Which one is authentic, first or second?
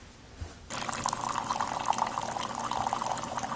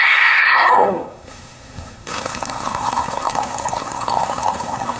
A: first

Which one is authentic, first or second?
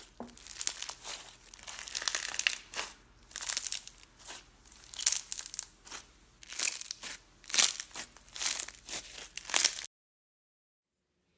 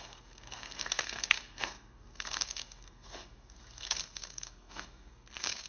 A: first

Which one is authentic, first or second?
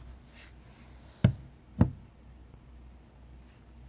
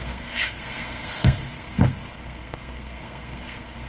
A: first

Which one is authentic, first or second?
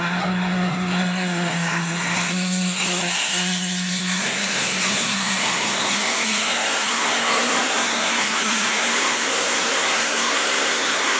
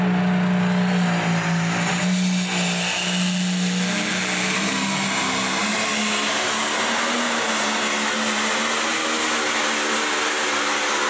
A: second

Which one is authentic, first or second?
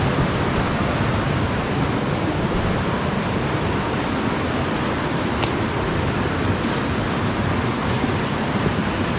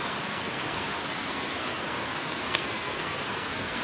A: first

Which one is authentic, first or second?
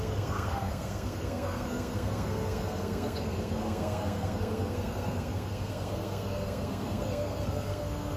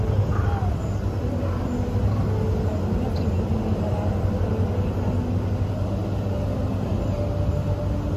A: second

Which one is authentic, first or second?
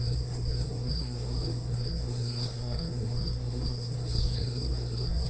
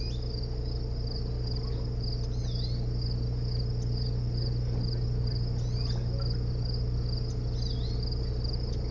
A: second